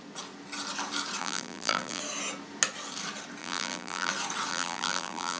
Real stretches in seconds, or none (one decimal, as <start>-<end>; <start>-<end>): 0.0-1.2; 2.0-3.4; 4.1-4.5